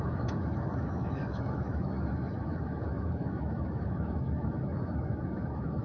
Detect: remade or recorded remade